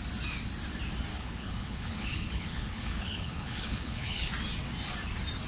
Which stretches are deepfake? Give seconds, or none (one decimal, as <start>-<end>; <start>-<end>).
1.1-4.3